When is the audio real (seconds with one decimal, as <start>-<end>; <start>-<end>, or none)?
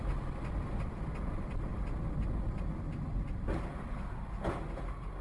0.0-5.2